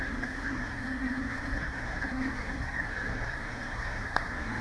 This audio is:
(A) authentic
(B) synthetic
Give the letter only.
B